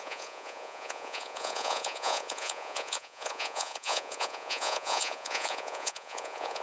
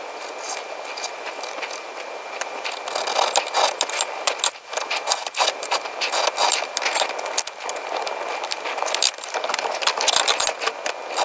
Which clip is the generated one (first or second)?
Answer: first